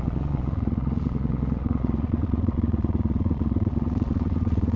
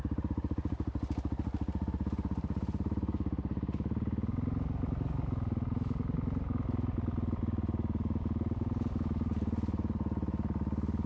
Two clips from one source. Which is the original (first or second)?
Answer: second